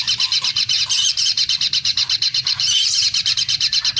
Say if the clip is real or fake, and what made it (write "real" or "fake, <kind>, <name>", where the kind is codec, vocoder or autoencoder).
fake, vocoder, BigVGAN v2